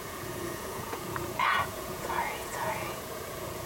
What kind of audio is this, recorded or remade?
remade